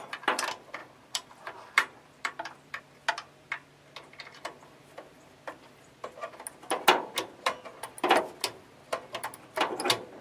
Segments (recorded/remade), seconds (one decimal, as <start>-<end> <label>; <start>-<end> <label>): 0.0-0.8 recorded; 0.8-2.8 remade; 2.8-10.2 recorded

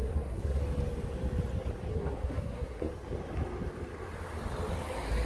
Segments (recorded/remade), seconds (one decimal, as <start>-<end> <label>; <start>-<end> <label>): 0.0-0.6 remade; 0.6-1.9 recorded; 1.9-2.9 remade; 2.9-5.3 recorded

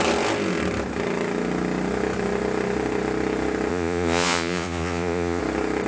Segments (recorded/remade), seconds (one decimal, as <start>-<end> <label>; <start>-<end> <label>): 0.0-3.7 recorded; 3.7-5.4 remade; 5.4-5.9 recorded

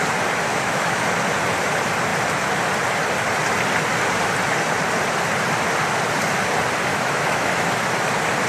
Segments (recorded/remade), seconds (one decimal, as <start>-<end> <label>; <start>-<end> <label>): 0.0-0.5 recorded; 0.5-1.0 remade; 1.0-6.9 recorded; 6.9-7.7 remade; 7.7-8.5 recorded

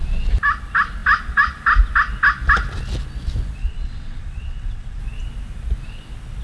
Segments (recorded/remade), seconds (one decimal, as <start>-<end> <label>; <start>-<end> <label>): 0.0-3.6 recorded; 3.6-5.0 remade; 5.0-6.4 recorded

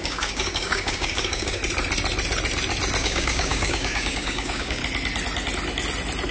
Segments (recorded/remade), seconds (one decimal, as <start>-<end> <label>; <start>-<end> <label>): 0.0-1.6 remade; 1.6-3.0 recorded; 3.0-4.8 remade; 4.8-6.3 recorded

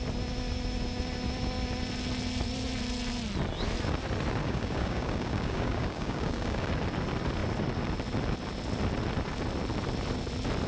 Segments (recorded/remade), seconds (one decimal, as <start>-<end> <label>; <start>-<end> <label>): 0.0-4.4 recorded; 4.4-6.7 remade; 6.7-10.7 recorded